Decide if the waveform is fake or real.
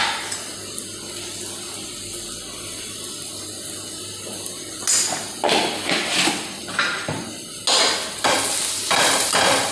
real